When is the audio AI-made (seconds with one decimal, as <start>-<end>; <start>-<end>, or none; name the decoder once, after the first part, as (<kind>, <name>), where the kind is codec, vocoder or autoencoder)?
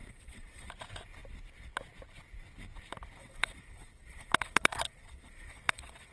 0.0-0.7 (vocoder, WaveNeXt); 3.2-6.1